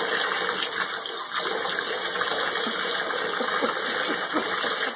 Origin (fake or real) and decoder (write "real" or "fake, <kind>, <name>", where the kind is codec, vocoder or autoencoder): real